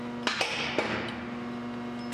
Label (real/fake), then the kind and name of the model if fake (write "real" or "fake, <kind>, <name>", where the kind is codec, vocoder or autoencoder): real